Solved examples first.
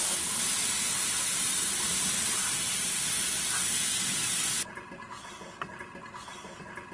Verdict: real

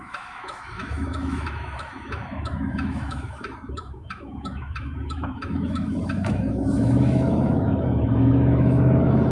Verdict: fake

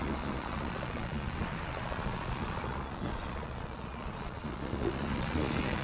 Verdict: fake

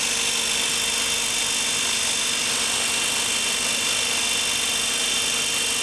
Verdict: real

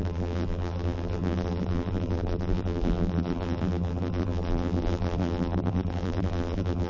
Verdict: fake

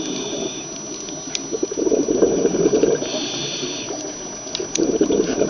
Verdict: real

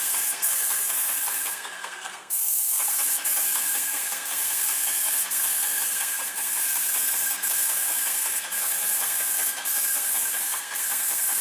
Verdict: fake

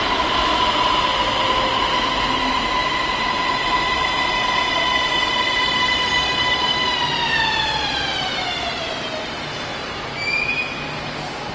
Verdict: real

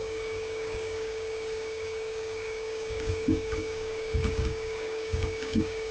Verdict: fake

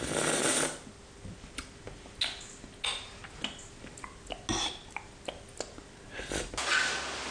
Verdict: real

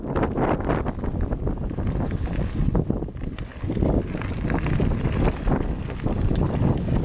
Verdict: real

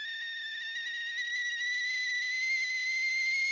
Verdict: real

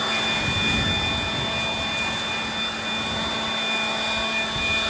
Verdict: real